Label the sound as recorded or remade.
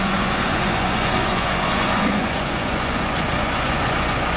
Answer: remade